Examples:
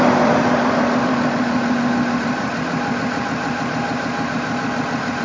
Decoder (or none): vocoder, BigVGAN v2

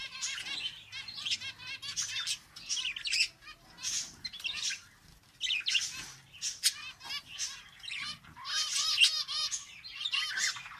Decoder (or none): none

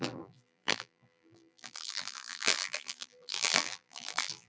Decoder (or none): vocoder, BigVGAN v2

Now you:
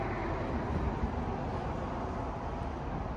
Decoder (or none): none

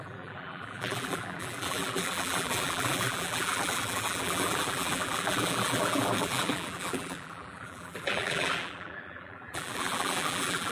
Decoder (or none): vocoder, BigVGAN v2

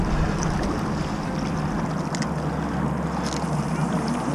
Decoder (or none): none